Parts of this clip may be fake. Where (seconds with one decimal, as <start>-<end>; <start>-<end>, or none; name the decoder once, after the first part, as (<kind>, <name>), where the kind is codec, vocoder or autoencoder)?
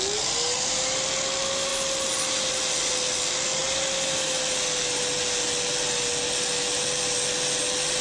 none